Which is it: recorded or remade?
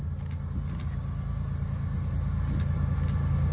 recorded